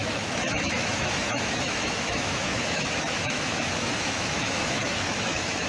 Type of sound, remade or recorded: remade